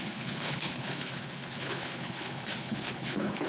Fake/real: fake